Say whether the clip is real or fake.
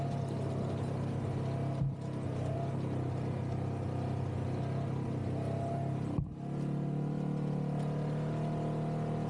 real